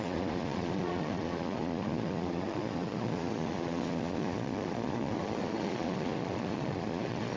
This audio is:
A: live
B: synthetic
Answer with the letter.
B